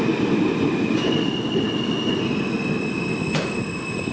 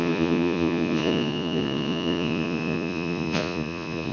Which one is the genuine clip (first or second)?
first